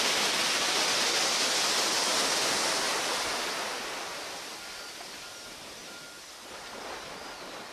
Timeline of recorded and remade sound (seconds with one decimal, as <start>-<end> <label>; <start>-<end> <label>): 0.0-5.8 recorded; 5.8-6.8 remade; 6.8-7.7 recorded